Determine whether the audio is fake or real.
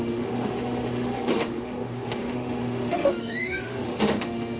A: fake